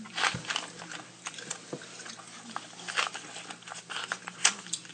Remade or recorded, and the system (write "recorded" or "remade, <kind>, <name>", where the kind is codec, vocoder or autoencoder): recorded